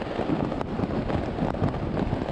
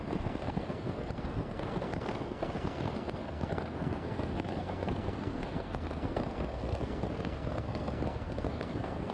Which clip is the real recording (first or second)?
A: first